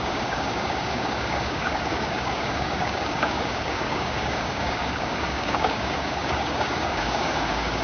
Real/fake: fake